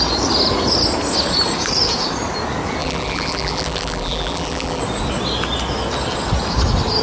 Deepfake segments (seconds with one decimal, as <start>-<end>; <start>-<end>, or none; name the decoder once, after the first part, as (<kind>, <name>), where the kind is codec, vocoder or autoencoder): 2.8-4.8 (vocoder, BigVGAN v2)